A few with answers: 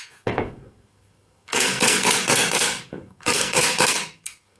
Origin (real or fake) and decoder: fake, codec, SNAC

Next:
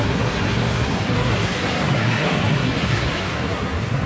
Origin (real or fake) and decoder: fake, codec, SNAC